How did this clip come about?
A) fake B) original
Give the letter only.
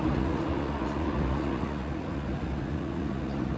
A